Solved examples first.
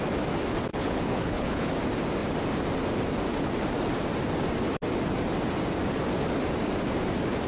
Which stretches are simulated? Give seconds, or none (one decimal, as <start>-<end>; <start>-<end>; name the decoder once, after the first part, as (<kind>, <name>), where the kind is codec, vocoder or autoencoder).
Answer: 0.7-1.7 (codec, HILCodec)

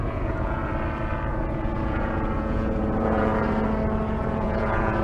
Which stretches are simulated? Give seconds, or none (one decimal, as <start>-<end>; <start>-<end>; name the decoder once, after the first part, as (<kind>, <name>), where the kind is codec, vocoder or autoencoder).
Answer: 0.0-0.6 (vocoder, Vocos); 1.3-3.3; 4.2-5.0

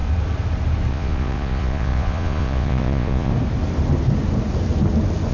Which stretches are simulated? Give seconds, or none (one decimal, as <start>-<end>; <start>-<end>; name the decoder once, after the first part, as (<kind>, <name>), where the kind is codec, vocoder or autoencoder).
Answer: 0.9-3.3 (vocoder, Vocos)

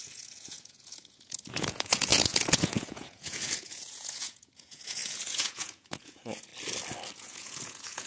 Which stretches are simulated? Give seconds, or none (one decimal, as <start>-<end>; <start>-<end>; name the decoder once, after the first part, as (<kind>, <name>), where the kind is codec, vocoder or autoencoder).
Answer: 0.0-6.5 (vocoder, Vocos); 7.1-8.1

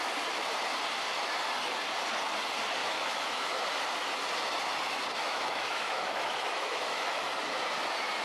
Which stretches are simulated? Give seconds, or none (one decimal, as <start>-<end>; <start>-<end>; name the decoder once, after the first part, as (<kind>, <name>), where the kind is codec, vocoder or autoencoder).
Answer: 2.8-3.6 (autoencoder, DAC-VAE); 5.2-7.3